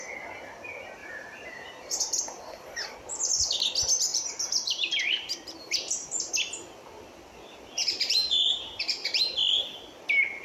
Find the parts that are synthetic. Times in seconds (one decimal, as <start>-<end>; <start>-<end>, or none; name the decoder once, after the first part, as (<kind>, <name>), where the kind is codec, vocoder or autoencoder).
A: 1.0-2.2 (vocoder, BigVGAN v2); 4.1-6.3; 7.8-9.2